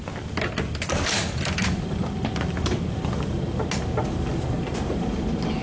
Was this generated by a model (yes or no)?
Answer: no